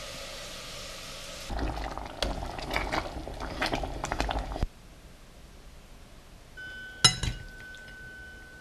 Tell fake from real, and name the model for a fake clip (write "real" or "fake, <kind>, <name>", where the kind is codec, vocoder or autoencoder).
real